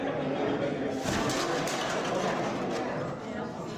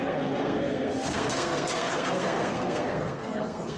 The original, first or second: first